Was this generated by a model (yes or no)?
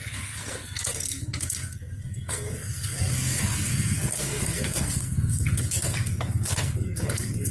yes